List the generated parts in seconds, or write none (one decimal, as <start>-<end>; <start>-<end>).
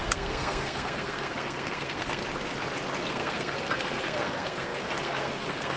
0.0-2.2; 3.1-5.8